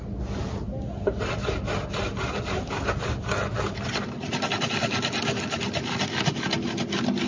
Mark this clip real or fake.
real